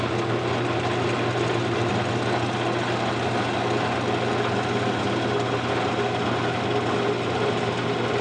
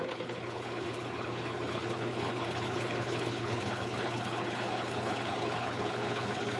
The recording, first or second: first